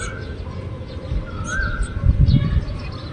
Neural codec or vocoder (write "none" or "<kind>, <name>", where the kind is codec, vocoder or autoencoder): none